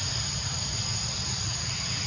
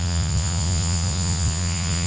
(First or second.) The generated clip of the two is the second